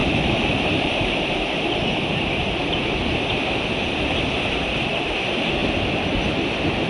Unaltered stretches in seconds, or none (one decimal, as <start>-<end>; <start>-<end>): 2.8-6.9